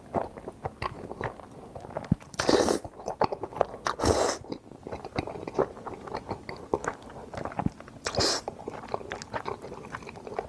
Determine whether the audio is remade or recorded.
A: recorded